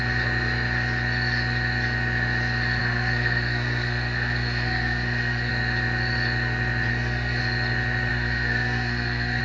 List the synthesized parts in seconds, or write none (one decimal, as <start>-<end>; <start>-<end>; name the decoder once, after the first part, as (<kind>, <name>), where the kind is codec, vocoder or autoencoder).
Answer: 2.8-5.5 (codec, SNAC); 6.9-7.4; 8.1-9.4